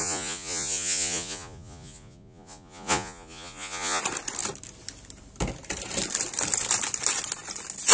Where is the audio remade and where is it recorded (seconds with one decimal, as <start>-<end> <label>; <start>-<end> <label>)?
0.0-4.0 remade; 4.0-7.9 recorded